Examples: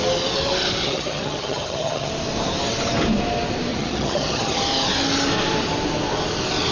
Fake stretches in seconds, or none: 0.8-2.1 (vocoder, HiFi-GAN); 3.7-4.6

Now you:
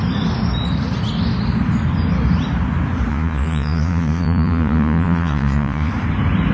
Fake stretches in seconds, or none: 3.1-5.9 (vocoder, Vocos)